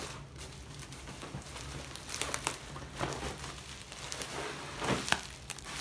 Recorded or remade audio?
recorded